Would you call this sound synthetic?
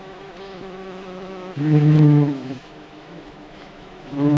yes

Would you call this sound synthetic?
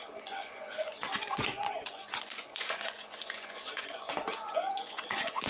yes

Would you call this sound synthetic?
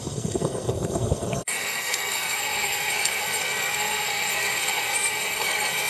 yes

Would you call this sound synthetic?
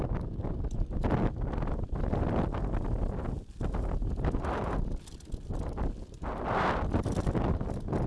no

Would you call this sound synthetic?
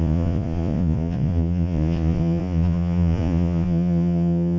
yes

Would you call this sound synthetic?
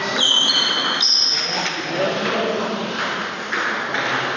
no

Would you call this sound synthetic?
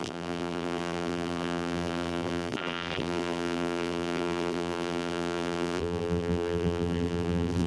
yes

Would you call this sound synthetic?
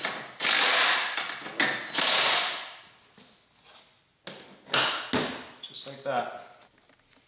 no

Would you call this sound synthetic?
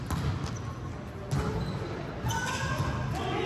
no